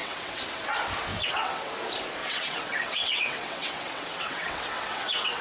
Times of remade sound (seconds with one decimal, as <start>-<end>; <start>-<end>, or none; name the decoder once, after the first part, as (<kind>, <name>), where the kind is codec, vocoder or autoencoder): 0.0-0.6 (vocoder, WaveNeXt); 1.1-1.7; 2.2-5.4